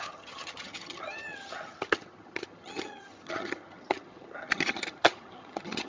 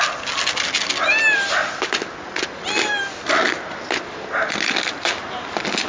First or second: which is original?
second